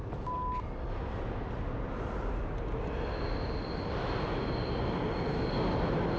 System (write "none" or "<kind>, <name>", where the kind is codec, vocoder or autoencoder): none